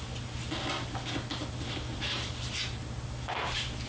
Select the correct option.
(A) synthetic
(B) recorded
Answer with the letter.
B